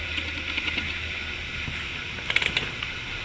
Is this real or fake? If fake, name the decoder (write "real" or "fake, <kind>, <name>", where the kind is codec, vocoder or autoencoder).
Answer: real